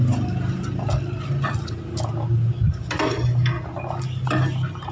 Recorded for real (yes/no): yes